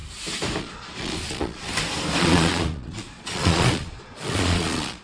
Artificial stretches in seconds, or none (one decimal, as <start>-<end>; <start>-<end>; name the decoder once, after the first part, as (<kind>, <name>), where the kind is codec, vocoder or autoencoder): 0.6-1.7 (vocoder, Vocos); 2.2-5.0